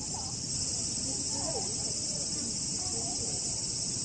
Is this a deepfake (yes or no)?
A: yes